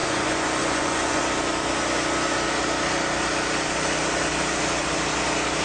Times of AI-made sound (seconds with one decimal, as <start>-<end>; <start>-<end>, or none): 0.0-1.2